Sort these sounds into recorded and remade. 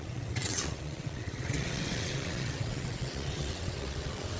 remade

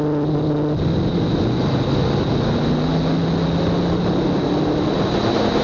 recorded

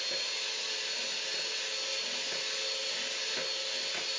recorded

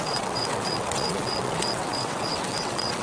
remade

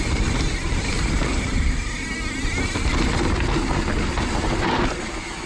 recorded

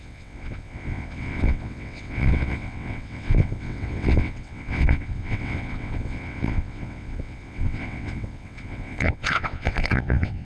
remade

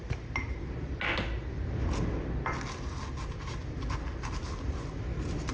recorded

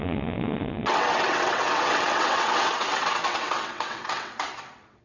remade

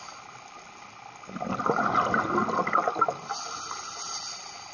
recorded